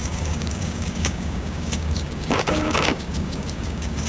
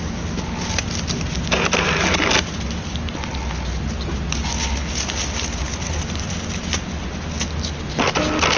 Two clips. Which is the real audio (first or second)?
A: second